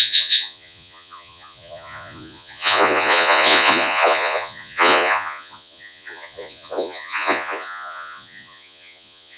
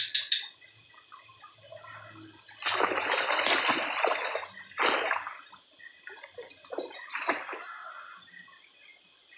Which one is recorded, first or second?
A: second